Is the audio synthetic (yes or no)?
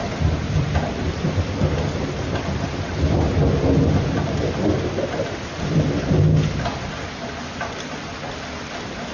no